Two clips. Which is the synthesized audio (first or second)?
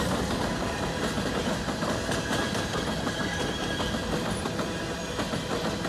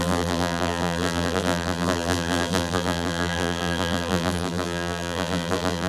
second